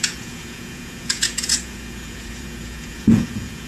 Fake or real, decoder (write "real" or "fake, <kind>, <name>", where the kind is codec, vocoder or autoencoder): fake, vocoder, Vocos